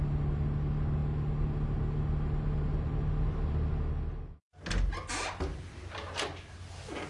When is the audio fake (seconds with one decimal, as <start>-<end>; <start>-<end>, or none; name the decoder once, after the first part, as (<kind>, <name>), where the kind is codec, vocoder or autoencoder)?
none